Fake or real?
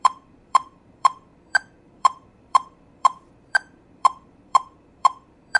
fake